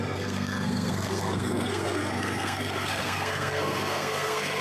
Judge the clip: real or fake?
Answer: fake